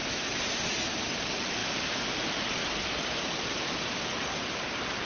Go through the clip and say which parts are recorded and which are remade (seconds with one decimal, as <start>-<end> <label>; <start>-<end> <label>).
0.0-2.6 remade; 2.6-3.5 recorded; 3.5-5.1 remade